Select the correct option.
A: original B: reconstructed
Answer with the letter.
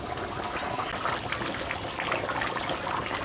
A